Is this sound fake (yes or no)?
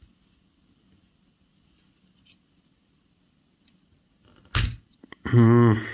no